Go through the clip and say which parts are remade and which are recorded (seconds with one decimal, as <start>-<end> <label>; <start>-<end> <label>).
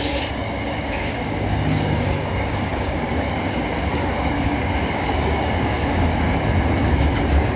0.0-6.1 remade; 6.1-6.8 recorded; 6.8-7.6 remade